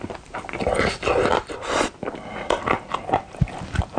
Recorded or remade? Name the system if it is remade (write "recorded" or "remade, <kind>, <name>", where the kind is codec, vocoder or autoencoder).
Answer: recorded